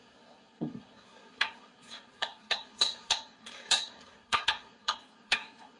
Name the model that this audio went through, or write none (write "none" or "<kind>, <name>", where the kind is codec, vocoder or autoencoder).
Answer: codec, SNAC